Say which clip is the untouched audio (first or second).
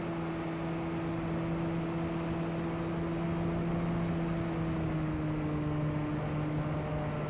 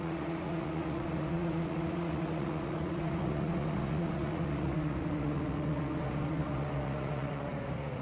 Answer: first